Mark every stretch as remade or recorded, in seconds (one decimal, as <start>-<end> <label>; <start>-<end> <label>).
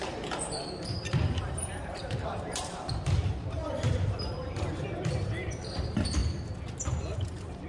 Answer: 0.0-6.2 remade; 6.2-7.0 recorded; 7.0-7.7 remade